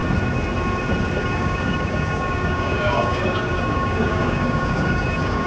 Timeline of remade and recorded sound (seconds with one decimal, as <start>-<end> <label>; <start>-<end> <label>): 0.0-1.2 recorded; 1.2-5.5 remade